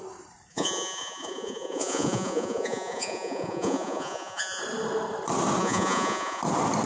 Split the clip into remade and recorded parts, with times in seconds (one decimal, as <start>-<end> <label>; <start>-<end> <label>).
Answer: 0.0-0.5 recorded; 0.5-4.6 remade; 4.6-5.6 recorded; 5.6-6.4 remade; 6.4-6.9 recorded